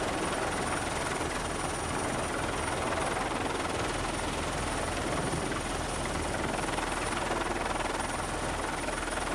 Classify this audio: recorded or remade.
recorded